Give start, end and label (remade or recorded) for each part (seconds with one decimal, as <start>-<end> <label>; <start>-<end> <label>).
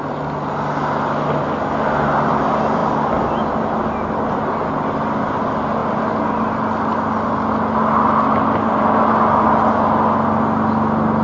0.0-11.2 recorded